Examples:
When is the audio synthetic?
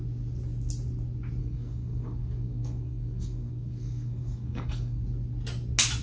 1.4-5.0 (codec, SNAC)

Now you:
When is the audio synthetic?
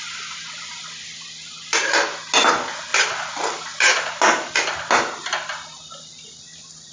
none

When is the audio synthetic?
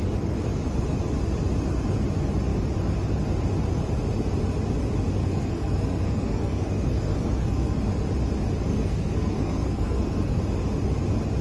5.2-7.8 (codec, SNAC); 8.7-10.4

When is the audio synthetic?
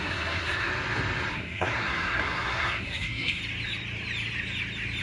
0.0-0.7 (codec, SNAC); 1.3-3.4